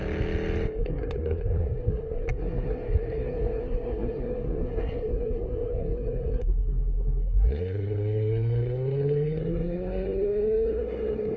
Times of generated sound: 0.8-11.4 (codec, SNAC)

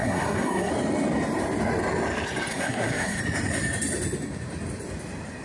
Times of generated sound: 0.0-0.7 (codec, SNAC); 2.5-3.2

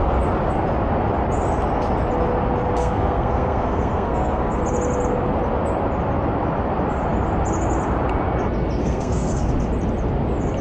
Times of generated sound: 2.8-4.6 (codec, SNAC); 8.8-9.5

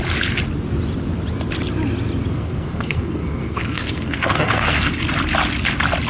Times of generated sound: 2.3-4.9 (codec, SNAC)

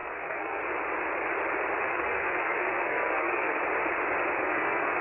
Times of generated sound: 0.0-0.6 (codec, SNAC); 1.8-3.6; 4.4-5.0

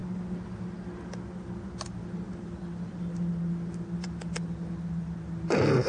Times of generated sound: none

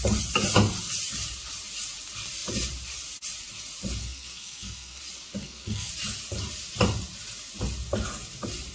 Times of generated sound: 4.0-5.0 (codec, SNAC); 5.4-5.9

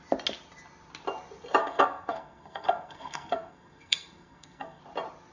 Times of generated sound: 1.6-4.8 (codec, SNAC)